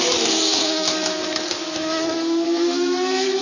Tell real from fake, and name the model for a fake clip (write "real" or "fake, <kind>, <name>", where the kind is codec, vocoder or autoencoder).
fake, autoencoder, DAC-VAE